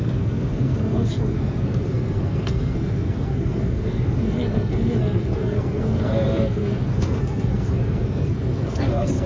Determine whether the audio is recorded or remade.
remade